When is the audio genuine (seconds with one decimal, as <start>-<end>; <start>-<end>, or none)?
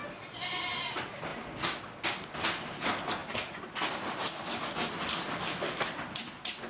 0.0-6.7